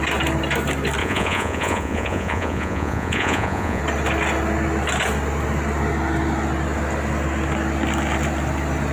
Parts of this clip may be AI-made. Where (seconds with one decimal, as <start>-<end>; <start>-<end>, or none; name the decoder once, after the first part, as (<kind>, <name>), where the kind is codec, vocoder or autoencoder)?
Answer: 1.0-3.8 (vocoder, Vocos)